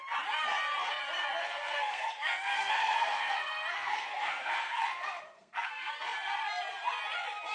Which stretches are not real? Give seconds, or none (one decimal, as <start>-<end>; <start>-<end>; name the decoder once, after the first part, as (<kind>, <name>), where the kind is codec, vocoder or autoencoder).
1.4-5.9 (codec, SNAC)